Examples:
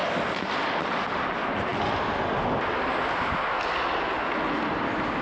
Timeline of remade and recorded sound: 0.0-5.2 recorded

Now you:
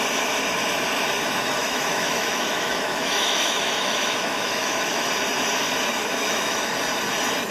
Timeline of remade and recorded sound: 0.0-1.6 recorded; 1.6-5.1 remade; 5.1-6.0 recorded; 6.0-6.7 remade; 6.7-7.5 recorded

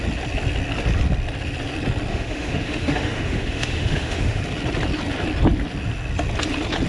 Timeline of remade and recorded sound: 0.0-2.1 recorded; 2.1-4.4 remade; 4.4-6.9 recorded

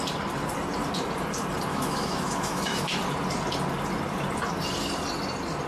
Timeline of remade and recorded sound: 0.0-1.7 recorded; 1.7-3.0 remade; 3.0-5.7 recorded